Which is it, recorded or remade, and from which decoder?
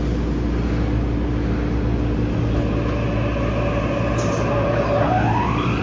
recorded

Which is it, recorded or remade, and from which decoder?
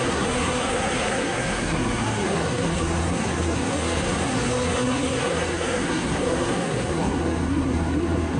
remade, codec, SNAC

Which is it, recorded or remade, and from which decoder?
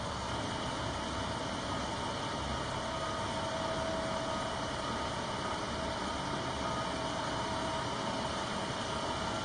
recorded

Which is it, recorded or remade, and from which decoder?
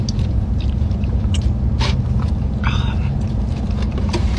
remade, vocoder, BigVGAN v2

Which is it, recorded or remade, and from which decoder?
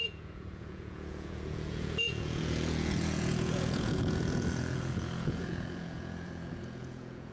remade, vocoder, Vocos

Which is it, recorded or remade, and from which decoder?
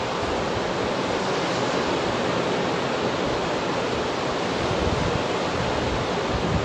recorded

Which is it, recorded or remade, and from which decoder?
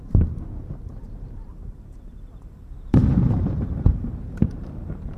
remade, vocoder, BigVGAN v2